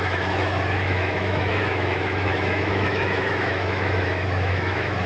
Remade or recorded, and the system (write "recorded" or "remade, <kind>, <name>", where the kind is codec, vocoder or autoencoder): remade, autoencoder, DAC-VAE